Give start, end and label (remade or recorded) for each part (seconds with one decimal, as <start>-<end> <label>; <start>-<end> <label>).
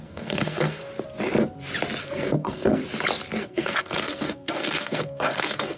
0.0-0.9 remade; 0.9-2.0 recorded; 2.0-2.8 remade; 2.8-3.4 recorded; 3.4-5.8 remade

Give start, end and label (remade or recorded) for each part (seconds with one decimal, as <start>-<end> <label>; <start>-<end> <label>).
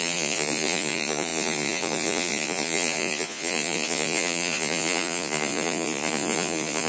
0.0-6.9 remade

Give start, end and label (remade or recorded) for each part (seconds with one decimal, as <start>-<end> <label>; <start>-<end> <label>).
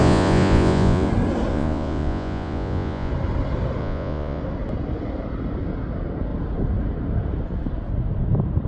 0.0-1.1 remade; 1.1-1.5 recorded; 1.5-3.1 remade; 3.1-3.8 recorded; 3.8-4.4 remade; 4.4-8.7 recorded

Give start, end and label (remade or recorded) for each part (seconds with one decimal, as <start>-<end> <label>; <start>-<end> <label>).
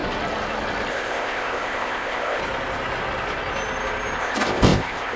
0.0-0.9 recorded; 0.9-2.4 remade; 2.4-4.2 recorded; 4.2-5.2 remade